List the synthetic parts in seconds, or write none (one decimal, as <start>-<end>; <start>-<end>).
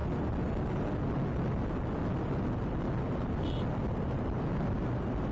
none